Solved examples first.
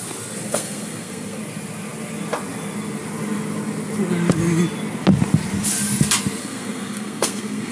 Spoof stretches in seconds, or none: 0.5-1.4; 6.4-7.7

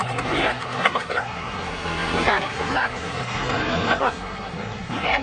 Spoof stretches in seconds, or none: 0.0-5.2

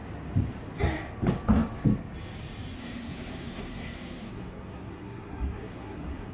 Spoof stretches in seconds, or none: 2.8-6.3